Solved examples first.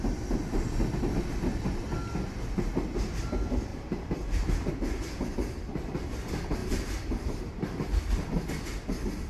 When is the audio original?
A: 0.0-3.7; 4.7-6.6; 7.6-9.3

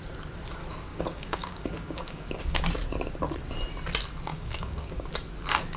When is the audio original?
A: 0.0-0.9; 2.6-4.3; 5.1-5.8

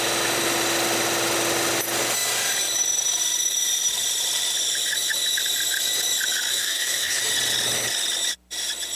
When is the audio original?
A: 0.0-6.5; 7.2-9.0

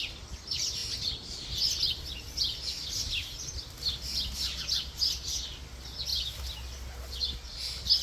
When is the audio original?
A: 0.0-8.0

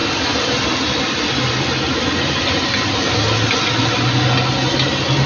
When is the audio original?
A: 0.0-5.3

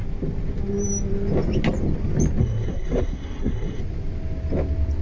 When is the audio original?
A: 0.0-2.4; 3.8-5.0

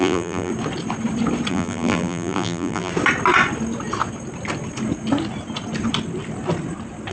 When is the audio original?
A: 0.5-1.5; 2.9-7.1

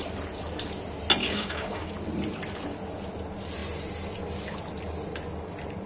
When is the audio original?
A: 0.0-1.2; 1.9-5.9